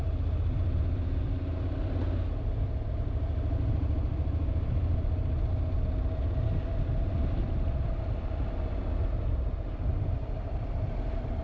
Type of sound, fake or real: real